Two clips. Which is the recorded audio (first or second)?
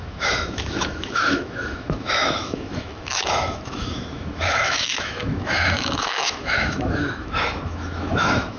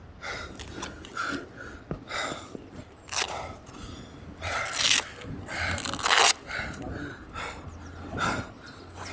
second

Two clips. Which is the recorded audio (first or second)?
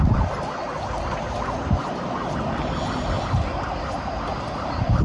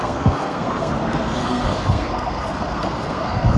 first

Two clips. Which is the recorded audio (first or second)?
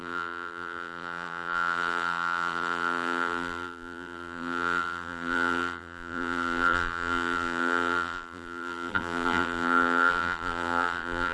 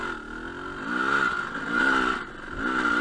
second